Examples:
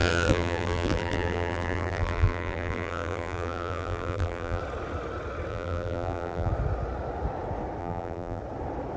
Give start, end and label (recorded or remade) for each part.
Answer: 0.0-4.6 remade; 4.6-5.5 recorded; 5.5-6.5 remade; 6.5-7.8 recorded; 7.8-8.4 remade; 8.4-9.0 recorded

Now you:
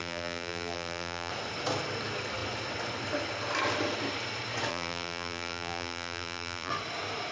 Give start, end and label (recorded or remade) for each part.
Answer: 0.0-1.3 remade; 1.3-4.7 recorded; 4.7-6.7 remade; 6.7-7.3 recorded

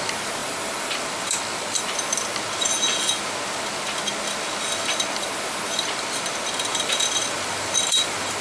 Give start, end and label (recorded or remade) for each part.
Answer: 0.0-0.4 recorded; 0.4-1.8 remade; 1.8-6.7 recorded; 6.7-8.4 remade

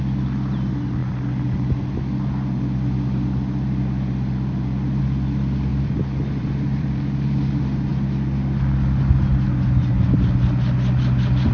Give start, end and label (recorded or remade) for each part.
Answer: 0.0-5.7 recorded; 5.7-6.5 remade; 6.5-11.5 recorded

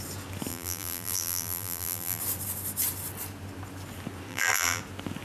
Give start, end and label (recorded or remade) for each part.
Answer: 0.0-0.5 recorded; 0.5-2.2 remade; 2.2-4.3 recorded; 4.3-4.8 remade; 4.8-5.2 recorded

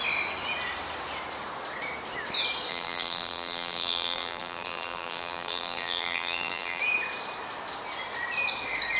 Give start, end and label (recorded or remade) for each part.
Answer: 0.0-2.7 recorded; 2.7-6.8 remade; 6.8-9.0 recorded

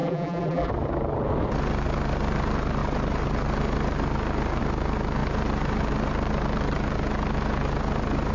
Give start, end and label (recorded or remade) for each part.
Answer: 0.0-0.7 remade; 0.7-8.3 recorded

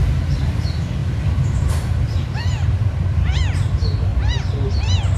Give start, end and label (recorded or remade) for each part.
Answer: 0.0-1.0 recorded; 1.0-3.4 remade; 3.4-5.2 recorded